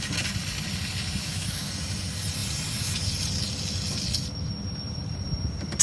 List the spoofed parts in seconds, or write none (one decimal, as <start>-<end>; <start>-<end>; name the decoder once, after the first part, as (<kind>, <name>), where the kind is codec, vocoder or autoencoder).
1.2-1.7 (autoencoder, DAC-VAE)